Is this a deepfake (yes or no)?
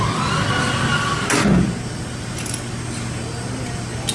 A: no